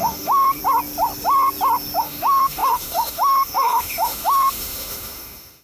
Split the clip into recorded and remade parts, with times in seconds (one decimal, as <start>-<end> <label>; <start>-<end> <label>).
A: 0.0-0.6 remade; 0.6-2.0 recorded; 2.0-5.6 remade